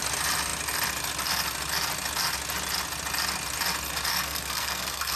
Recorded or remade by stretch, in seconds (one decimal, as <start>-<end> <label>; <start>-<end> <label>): 0.0-4.1 recorded; 4.1-5.2 remade